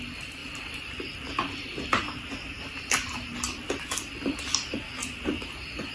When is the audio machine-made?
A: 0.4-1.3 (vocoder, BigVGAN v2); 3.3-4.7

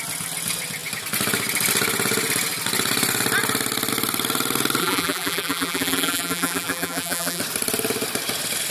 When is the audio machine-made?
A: 4.8-7.4 (vocoder, BigVGAN v2)

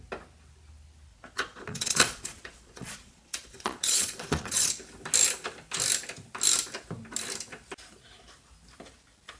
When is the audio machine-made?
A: 1.1-4.7 (vocoder, Vocos)

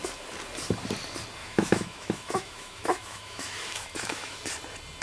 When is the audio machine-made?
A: 1.4-4.4 (autoencoder, DAC-VAE)